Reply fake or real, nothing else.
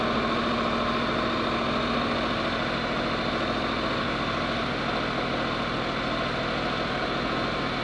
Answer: real